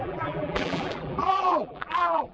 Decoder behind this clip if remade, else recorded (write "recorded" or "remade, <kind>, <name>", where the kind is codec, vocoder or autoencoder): remade, vocoder, BigVGAN v2